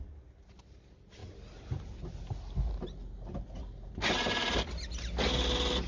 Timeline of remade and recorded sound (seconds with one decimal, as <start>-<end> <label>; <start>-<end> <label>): 0.0-5.9 recorded